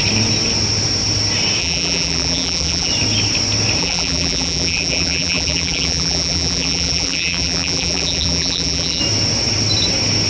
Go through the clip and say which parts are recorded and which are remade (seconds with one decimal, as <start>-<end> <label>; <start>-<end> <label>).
0.0-1.6 recorded; 1.6-2.9 remade; 2.9-3.8 recorded; 3.8-9.0 remade; 9.0-10.3 recorded